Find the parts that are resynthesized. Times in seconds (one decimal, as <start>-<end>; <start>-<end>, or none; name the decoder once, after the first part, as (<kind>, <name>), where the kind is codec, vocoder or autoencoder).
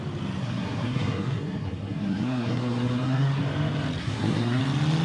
0.4-3.4 (codec, SNAC); 4.0-4.6